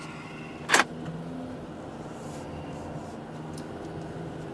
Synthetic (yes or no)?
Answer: no